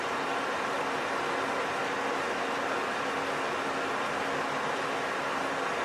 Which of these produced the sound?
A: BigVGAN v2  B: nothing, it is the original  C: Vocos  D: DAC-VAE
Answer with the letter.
B